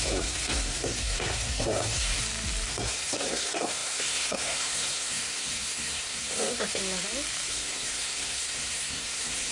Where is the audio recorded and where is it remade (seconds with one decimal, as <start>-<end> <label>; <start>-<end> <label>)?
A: 0.0-2.2 remade; 2.2-2.7 recorded; 2.7-6.8 remade; 6.8-7.5 recorded; 7.5-9.5 remade